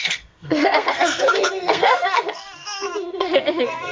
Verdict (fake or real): fake